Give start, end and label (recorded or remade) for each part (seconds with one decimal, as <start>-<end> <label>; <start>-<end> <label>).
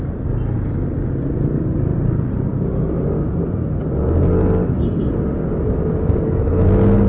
0.0-7.1 recorded